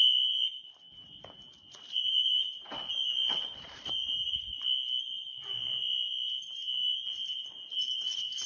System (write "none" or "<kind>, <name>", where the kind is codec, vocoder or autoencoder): none